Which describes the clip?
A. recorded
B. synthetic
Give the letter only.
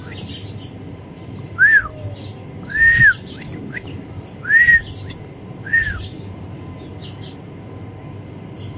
A